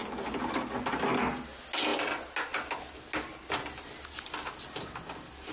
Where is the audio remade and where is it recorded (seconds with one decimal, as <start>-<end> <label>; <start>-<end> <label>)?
0.0-5.5 recorded